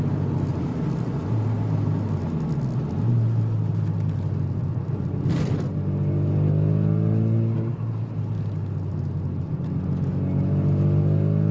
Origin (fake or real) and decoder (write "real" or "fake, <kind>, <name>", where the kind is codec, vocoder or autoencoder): real